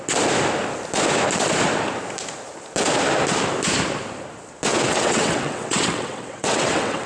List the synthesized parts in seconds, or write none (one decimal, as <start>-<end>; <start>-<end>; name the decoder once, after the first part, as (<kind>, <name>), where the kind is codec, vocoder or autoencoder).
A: 4.7-7.1 (vocoder, WaveNeXt)